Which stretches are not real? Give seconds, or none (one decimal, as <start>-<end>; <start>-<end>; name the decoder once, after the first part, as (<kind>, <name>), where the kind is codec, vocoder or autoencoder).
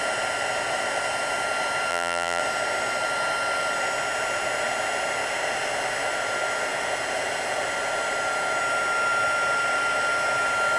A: 1.9-2.4 (vocoder, BigVGAN v2)